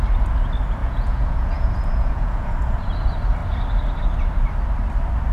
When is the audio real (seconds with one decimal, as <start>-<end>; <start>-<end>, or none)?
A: 0.0-0.8; 2.8-5.3